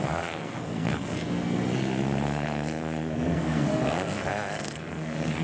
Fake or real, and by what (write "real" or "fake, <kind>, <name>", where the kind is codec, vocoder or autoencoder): fake, codec, SNAC